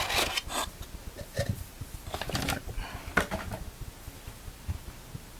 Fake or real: real